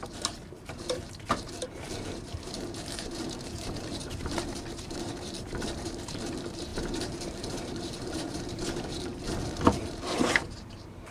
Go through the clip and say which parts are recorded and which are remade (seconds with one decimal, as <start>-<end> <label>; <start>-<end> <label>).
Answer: 0.0-9.1 remade; 9.1-9.8 recorded; 9.8-11.1 remade